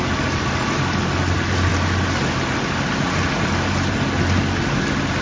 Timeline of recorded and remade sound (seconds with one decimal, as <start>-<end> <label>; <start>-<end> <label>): 0.0-5.2 recorded